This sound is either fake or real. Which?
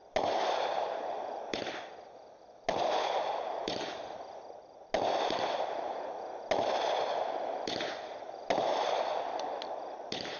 real